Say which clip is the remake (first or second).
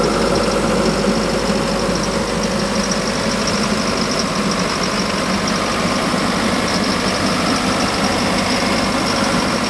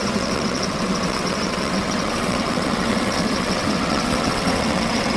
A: second